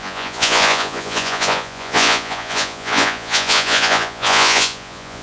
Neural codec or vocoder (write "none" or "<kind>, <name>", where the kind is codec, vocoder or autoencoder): vocoder, Vocos